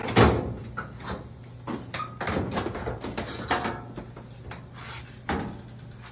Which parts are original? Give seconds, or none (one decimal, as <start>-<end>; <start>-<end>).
0.0-6.1